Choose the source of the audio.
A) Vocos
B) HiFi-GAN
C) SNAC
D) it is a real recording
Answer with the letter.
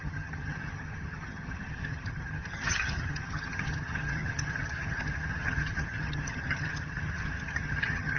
B